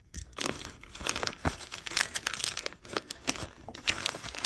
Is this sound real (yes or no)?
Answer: no